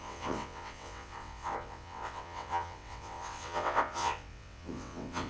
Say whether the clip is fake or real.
fake